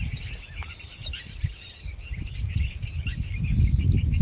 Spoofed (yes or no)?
no